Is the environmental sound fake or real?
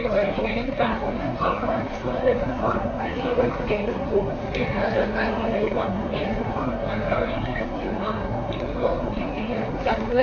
fake